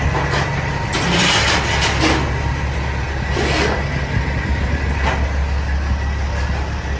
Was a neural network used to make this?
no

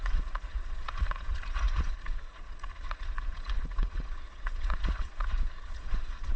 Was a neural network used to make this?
yes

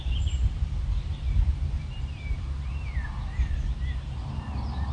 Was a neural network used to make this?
yes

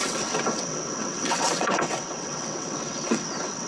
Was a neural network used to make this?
yes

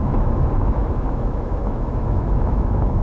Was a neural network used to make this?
yes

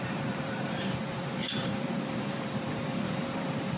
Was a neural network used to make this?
yes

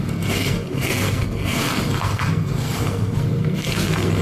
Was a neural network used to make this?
yes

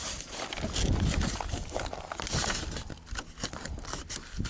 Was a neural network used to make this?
no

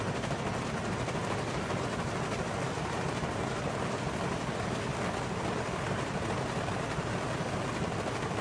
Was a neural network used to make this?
no